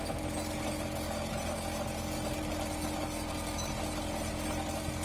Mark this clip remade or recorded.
recorded